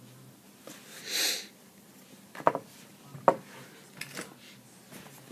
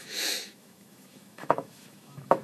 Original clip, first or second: first